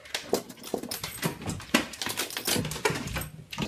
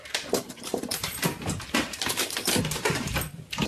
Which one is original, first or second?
first